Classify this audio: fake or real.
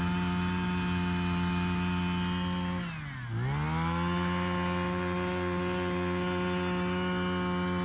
real